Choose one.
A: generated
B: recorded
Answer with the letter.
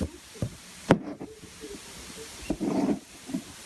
A